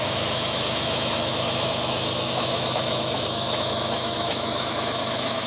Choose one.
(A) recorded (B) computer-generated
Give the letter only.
B